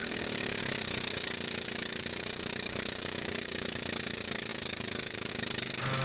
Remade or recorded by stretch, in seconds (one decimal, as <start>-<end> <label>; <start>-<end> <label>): 0.0-6.0 remade